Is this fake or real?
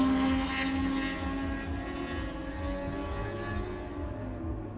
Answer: real